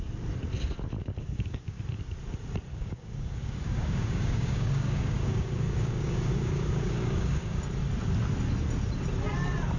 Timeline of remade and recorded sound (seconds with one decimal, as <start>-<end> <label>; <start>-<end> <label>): 0.0-1.0 recorded; 1.0-1.8 remade; 1.8-2.7 recorded; 2.7-7.6 remade; 7.6-9.8 recorded